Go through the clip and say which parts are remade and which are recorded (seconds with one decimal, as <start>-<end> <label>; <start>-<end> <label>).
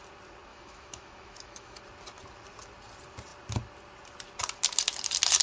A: 0.0-0.5 recorded; 0.5-1.8 remade; 1.8-5.4 recorded